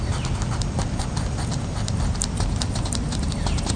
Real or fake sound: real